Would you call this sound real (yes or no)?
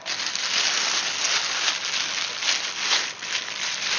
yes